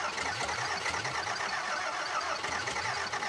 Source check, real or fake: real